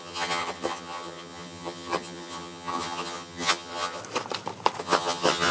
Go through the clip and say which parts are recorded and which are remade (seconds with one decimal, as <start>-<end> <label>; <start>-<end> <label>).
0.0-4.0 remade; 4.0-4.8 recorded; 4.8-5.5 remade